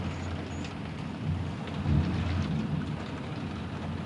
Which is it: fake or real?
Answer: real